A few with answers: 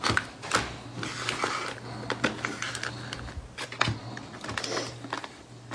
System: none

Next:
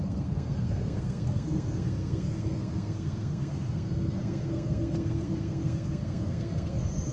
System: codec, SNAC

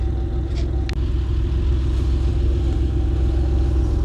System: none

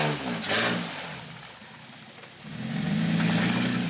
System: none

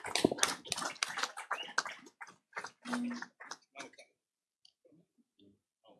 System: none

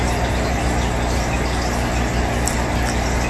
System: none